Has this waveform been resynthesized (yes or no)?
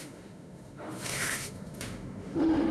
yes